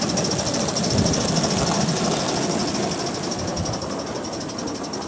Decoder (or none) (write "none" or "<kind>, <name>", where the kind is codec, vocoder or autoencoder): none